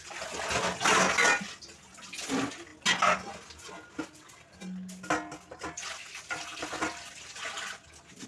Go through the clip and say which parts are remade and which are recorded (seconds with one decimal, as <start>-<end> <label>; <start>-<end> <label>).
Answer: 0.0-8.3 recorded